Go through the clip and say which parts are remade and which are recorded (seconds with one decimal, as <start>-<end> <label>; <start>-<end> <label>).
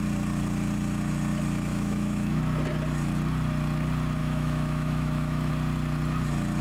0.0-1.7 recorded; 1.7-2.4 remade; 2.4-4.2 recorded; 4.2-5.5 remade; 5.5-6.6 recorded